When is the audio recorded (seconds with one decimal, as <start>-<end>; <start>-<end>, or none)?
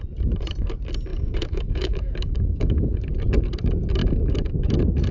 0.0-1.1; 3.1-4.0; 4.5-5.1